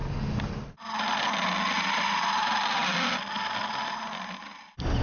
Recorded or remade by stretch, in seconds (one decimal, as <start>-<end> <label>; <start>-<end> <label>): 0.0-5.0 recorded